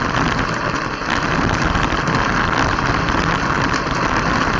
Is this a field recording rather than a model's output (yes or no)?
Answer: yes